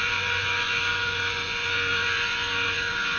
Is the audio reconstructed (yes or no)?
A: yes